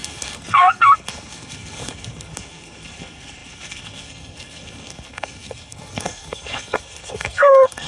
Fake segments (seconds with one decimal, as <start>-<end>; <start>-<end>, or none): 0.0-7.9